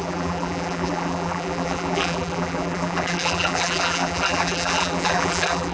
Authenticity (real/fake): fake